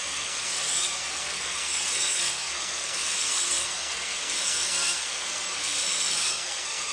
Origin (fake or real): fake